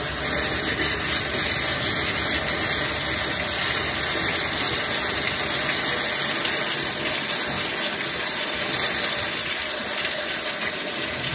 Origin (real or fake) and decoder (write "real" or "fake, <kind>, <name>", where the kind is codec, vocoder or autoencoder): real